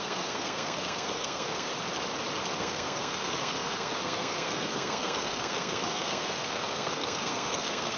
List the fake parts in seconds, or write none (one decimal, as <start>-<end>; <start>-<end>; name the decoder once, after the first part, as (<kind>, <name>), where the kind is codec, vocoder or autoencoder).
0.0-1.7 (codec, SNAC); 2.6-8.0